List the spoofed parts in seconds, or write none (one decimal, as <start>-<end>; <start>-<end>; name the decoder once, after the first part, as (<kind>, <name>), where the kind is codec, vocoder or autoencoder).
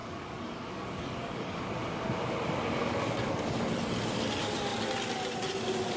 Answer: 0.0-1.6 (codec, DAC); 2.8-3.6